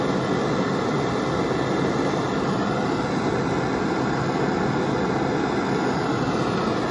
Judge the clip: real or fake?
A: real